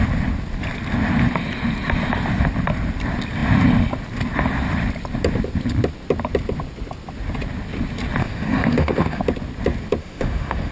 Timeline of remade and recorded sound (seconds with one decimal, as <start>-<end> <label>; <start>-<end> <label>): 0.0-8.2 recorded; 8.2-9.2 remade; 9.2-10.0 recorded; 10.0-10.7 remade